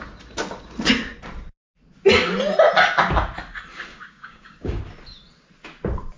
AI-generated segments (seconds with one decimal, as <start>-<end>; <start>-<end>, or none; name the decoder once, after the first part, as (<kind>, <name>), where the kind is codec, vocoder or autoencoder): 3.9-4.8 (codec, DAC)